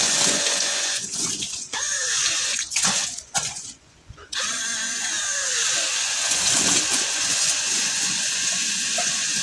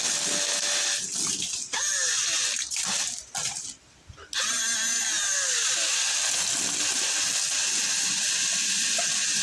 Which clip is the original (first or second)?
second